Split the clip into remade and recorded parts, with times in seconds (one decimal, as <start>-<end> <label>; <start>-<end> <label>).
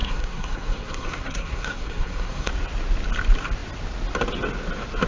0.0-2.5 remade; 2.5-5.1 recorded